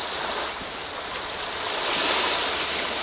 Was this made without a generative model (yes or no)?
yes